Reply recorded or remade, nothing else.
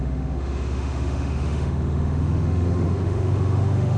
remade